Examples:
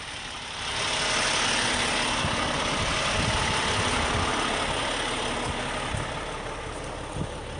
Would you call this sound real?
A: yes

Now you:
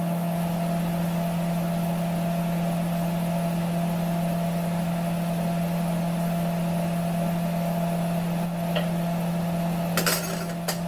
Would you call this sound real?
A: yes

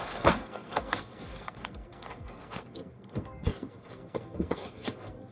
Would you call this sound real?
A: no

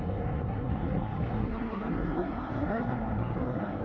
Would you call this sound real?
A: no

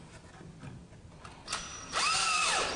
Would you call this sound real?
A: yes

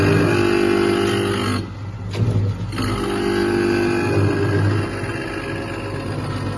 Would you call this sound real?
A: yes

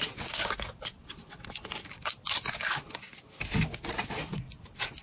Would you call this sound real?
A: yes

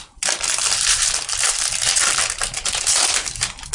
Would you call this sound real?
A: yes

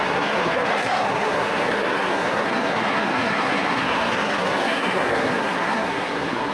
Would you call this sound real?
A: no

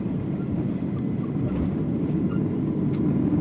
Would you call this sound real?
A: yes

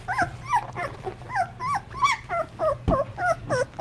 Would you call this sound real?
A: yes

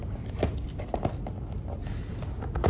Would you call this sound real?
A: yes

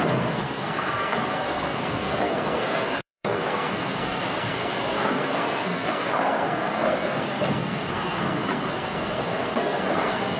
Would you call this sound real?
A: no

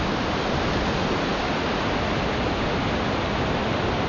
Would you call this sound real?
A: yes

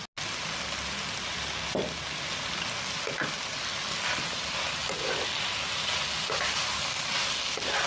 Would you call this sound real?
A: yes